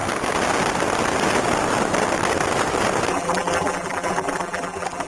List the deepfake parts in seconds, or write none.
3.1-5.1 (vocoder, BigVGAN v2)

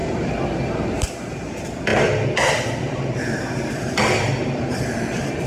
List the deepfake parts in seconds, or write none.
1.9-4.6 (vocoder, BigVGAN v2)

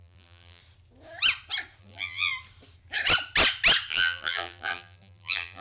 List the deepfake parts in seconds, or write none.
0.0-0.6 (vocoder, BigVGAN v2); 1.8-2.3; 3.9-5.6

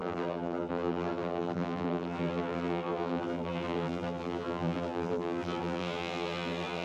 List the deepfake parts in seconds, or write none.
0.0-6.8 (vocoder, BigVGAN v2)

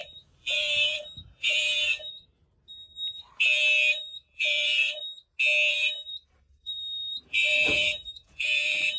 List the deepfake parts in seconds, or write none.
0.0-2.4 (vocoder, BigVGAN v2); 3.9-5.0; 5.7-9.0

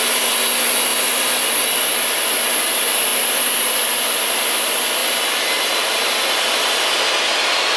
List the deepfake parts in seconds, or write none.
0.9-1.4 (vocoder, BigVGAN v2); 5.0-5.7

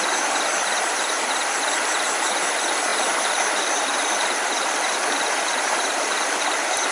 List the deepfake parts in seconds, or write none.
0.0-6.9 (vocoder, BigVGAN v2)